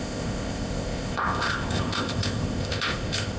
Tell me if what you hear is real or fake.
fake